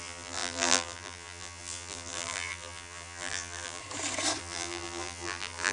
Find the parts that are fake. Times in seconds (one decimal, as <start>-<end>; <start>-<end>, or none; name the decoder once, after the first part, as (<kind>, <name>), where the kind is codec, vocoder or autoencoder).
0.0-3.8 (vocoder, BigVGAN v2); 4.4-5.7